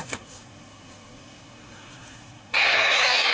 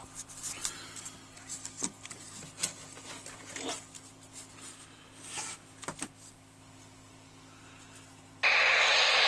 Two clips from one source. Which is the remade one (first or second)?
first